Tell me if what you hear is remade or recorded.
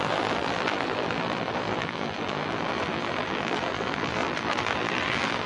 remade